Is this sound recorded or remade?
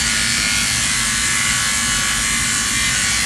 recorded